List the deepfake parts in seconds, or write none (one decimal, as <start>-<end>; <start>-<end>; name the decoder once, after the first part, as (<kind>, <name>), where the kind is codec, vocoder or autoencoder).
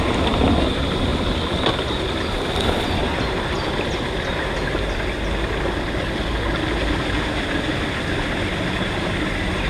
none